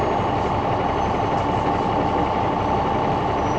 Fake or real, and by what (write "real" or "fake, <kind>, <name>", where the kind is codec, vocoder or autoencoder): real